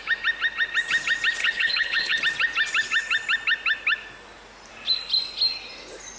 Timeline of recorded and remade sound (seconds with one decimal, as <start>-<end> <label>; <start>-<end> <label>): 0.0-1.4 recorded; 1.4-2.2 remade; 2.2-6.2 recorded